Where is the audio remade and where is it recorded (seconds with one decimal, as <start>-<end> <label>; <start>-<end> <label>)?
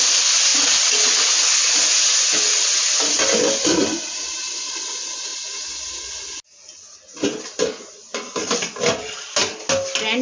0.0-10.2 recorded